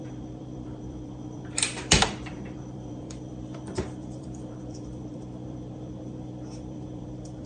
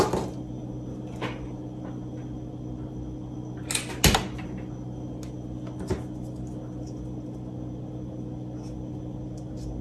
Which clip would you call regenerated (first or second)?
first